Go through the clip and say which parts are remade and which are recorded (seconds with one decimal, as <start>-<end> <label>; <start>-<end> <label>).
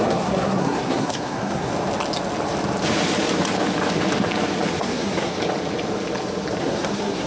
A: 0.0-1.7 remade; 1.7-4.8 recorded; 4.8-5.3 remade; 5.3-6.6 recorded; 6.6-7.3 remade